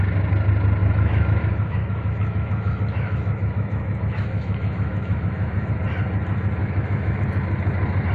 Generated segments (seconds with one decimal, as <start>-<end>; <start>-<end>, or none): 0.8-5.7; 6.6-7.2